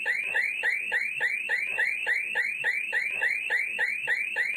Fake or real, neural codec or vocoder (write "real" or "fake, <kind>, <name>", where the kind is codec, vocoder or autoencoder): real